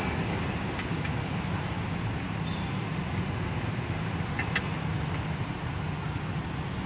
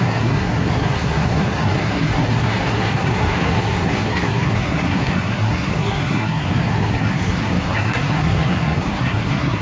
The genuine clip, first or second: first